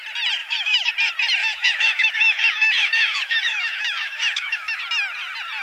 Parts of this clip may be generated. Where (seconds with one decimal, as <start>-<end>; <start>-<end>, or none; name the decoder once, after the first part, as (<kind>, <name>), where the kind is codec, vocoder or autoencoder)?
0.4-0.9 (autoencoder, DAC-VAE); 1.4-4.8